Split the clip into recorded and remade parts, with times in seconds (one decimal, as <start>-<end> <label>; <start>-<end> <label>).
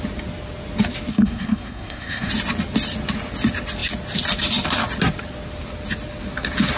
0.0-1.1 recorded; 1.1-2.3 remade; 2.3-6.8 recorded